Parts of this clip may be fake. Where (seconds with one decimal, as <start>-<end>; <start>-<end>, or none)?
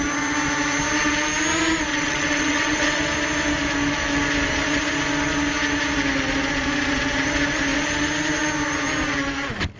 1.9-3.0